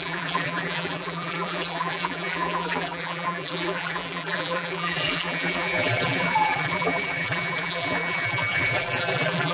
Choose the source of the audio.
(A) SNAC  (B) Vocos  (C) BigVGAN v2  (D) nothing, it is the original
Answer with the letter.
C